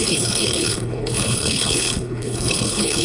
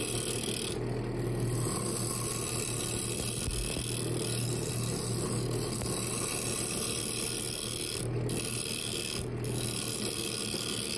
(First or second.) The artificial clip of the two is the first